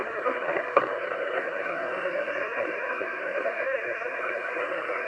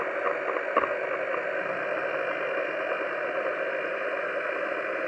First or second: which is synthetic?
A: first